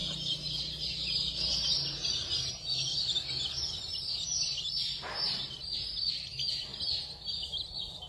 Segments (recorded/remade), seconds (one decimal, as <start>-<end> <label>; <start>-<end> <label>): 0.0-8.1 recorded